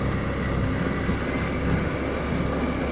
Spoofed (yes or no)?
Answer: no